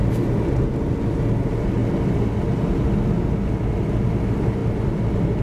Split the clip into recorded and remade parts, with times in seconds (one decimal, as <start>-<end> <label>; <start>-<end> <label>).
0.0-5.4 recorded